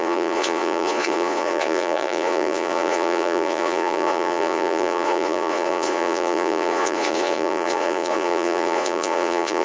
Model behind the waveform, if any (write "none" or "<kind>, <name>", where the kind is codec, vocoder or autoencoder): vocoder, Vocos